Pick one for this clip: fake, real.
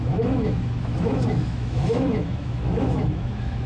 fake